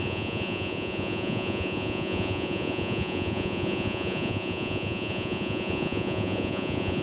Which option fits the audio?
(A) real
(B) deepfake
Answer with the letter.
B